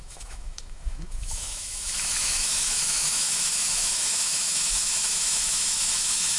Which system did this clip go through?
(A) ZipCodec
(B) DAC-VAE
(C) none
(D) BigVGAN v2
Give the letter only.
B